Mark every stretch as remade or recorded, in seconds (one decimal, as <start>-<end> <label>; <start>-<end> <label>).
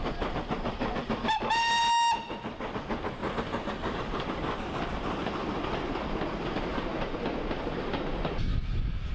0.0-3.2 recorded; 3.2-4.9 remade; 4.9-6.7 recorded; 6.7-7.2 remade; 7.2-9.1 recorded